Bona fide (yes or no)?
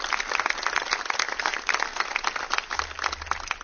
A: yes